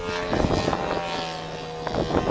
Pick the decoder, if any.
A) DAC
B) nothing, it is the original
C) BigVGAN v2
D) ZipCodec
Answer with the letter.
B